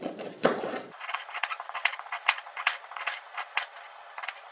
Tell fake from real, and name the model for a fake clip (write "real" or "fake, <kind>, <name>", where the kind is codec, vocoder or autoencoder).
fake, vocoder, Vocos